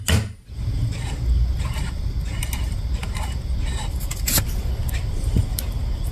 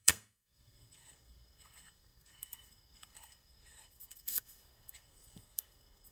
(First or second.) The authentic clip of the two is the first